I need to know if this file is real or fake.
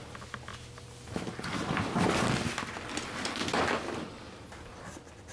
real